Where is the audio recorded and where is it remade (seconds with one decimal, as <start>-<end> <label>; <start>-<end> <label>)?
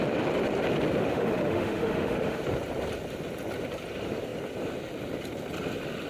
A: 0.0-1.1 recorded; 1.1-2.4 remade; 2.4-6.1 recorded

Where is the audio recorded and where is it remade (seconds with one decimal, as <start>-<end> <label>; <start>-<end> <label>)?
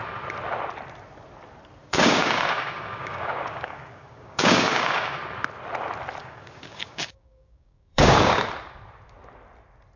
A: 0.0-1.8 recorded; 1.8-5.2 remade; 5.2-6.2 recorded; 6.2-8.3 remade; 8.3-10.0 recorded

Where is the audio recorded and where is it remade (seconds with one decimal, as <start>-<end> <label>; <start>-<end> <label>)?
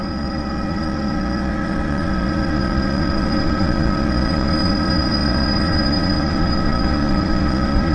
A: 0.0-7.9 remade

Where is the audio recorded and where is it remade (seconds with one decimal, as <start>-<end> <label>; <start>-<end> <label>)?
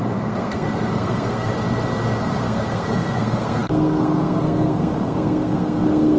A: 0.0-1.5 remade; 1.5-2.2 recorded; 2.2-6.2 remade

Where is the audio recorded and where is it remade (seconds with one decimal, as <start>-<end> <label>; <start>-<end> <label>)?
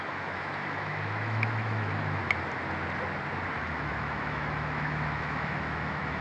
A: 0.0-2.2 remade; 2.2-3.6 recorded; 3.6-6.2 remade